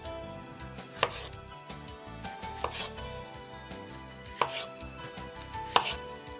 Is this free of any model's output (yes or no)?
yes